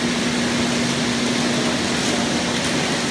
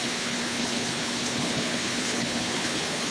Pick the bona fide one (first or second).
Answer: first